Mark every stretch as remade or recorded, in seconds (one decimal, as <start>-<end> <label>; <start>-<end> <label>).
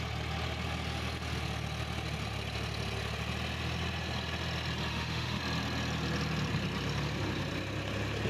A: 0.0-4.9 recorded; 4.9-5.4 remade; 5.4-8.3 recorded